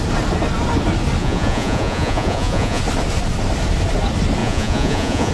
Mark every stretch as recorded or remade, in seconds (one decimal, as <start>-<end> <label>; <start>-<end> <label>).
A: 0.0-1.2 recorded; 1.2-2.8 remade; 2.8-4.4 recorded; 4.4-5.3 remade